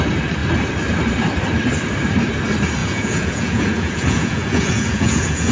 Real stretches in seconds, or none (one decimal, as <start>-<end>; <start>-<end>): 0.0-2.8